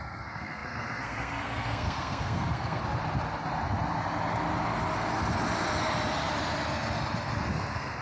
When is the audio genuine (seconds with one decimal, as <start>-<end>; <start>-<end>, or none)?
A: 2.8-7.5